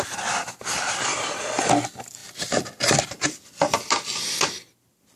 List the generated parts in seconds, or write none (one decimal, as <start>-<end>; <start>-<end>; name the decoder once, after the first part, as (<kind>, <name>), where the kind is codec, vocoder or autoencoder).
0.0-5.2 (vocoder, BigVGAN v2)